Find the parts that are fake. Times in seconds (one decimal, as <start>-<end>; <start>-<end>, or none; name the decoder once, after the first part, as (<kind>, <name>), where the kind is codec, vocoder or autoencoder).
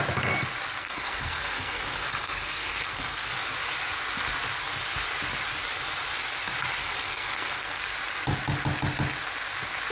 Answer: 0.8-3.3 (codec, SNAC); 6.8-7.8